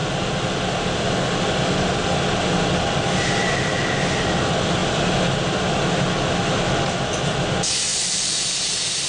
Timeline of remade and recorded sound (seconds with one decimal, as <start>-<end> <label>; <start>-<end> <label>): 0.0-7.9 recorded; 7.9-8.5 remade; 8.5-9.1 recorded